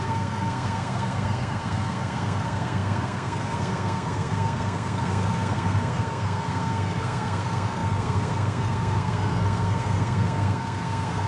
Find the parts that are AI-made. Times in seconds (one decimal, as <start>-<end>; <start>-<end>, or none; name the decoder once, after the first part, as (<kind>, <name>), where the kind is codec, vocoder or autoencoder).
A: 0.0-11.3 (codec, SNAC)